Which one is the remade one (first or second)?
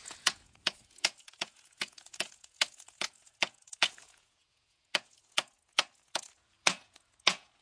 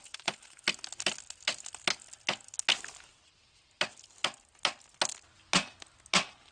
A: first